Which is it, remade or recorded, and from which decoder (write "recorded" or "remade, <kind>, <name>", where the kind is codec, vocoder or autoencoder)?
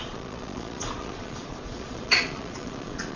remade, vocoder, Vocos